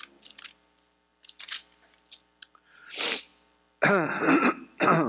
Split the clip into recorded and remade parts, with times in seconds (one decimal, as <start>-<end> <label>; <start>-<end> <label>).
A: 0.0-5.1 recorded